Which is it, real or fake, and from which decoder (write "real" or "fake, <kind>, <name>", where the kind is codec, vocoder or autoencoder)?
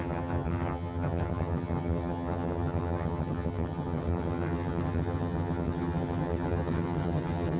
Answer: fake, vocoder, HiFi-GAN